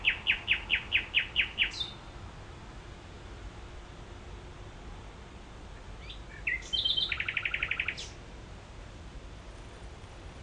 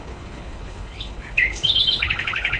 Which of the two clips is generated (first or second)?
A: second